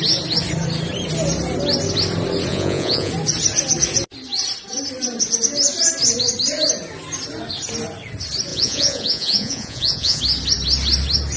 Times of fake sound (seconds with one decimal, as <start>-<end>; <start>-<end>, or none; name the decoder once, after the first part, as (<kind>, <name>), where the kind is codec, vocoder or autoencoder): 2.5-3.1 (vocoder, Vocos); 8.5-10.2